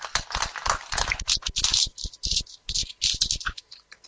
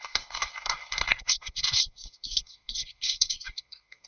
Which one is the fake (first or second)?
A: second